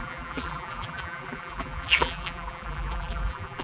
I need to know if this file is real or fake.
fake